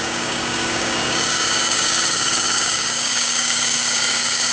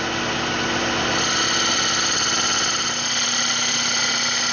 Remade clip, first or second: first